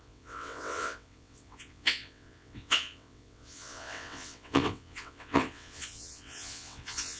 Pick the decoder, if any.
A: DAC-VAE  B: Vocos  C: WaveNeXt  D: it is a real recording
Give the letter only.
C